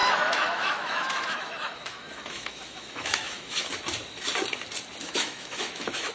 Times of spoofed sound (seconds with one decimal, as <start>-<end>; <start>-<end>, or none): 0.0-3.7; 5.0-6.1